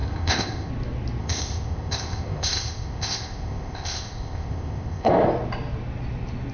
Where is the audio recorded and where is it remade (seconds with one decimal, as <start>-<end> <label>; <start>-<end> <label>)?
0.0-0.7 remade; 0.7-1.2 recorded; 1.2-5.1 remade; 5.1-6.5 recorded